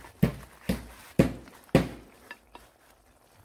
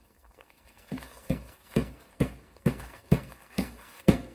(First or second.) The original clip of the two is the first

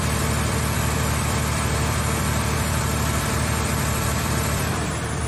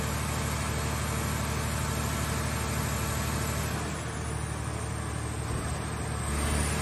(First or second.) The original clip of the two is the second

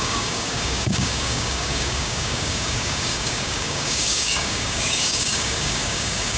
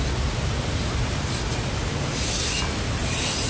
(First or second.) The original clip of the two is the second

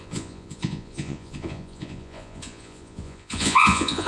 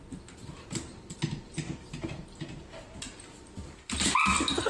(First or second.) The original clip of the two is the second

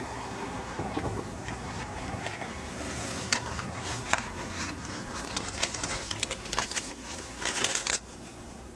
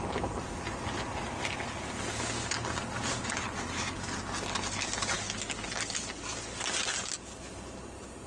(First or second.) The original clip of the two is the second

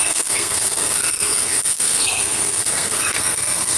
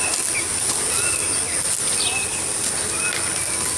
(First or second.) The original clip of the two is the second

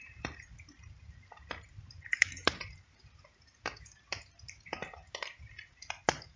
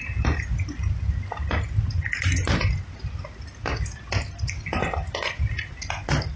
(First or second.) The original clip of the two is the second